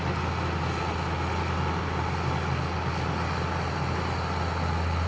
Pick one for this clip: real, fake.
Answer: real